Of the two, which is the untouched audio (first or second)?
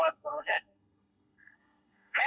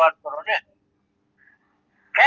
second